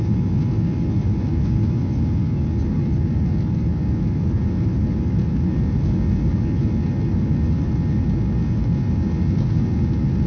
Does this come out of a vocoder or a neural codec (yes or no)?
no